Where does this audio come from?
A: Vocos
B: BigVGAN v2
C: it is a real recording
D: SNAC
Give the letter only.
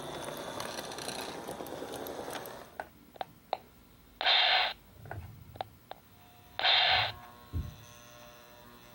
C